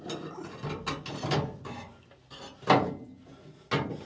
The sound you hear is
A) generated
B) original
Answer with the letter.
B